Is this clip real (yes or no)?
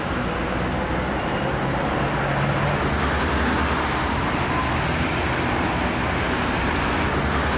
yes